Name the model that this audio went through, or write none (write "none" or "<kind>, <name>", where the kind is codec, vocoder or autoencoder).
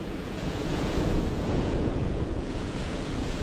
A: vocoder, Vocos